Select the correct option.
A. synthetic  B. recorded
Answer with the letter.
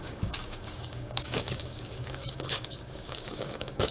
A